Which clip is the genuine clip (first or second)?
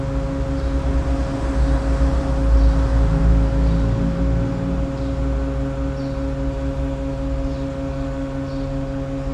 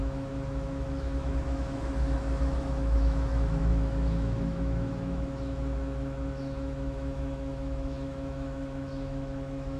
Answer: first